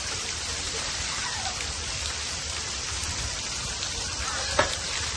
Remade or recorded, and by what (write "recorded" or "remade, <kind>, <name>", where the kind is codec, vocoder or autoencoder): remade, vocoder, BigVGAN v2